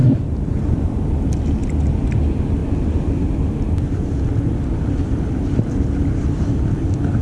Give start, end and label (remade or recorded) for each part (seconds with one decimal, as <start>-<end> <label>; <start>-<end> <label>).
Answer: 0.0-1.0 remade; 1.0-1.6 recorded; 1.6-2.2 remade; 2.2-7.2 recorded